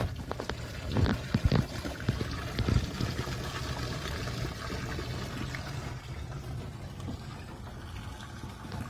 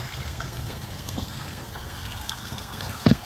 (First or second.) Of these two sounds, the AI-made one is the second